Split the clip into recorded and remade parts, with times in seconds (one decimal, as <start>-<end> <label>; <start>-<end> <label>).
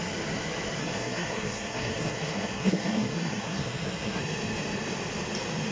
0.0-0.8 recorded; 0.8-4.2 remade; 4.2-5.7 recorded